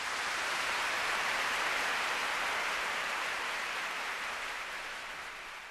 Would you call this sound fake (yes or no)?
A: yes